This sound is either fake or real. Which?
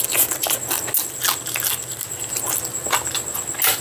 real